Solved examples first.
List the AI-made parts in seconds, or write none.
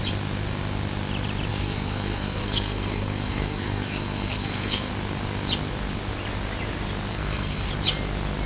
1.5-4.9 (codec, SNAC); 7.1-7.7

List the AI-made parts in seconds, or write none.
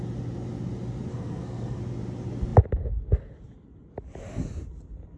1.1-1.8 (codec, SNAC)